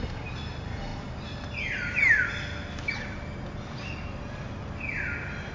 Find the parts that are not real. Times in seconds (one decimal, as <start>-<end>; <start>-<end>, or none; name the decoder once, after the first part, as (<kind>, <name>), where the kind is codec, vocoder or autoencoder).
none